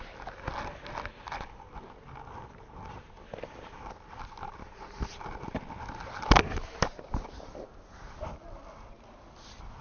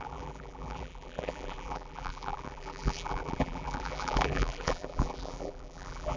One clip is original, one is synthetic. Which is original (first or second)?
first